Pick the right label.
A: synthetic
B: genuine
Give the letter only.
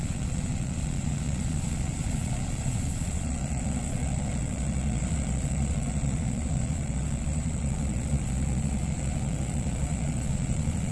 A